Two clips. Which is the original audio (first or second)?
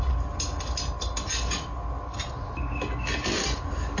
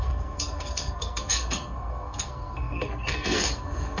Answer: first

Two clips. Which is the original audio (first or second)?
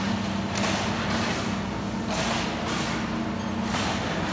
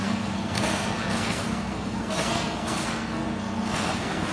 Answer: first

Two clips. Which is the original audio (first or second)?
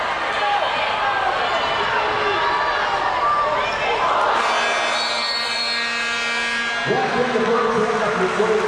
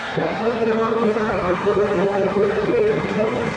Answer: first